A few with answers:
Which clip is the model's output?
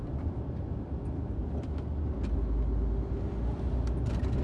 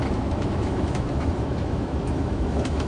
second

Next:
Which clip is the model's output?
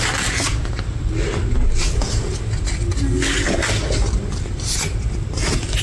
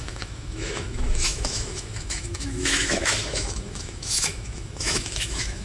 second